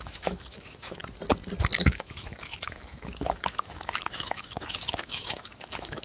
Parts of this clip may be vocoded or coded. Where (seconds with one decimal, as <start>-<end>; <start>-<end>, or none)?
0.0-1.0; 1.8-6.0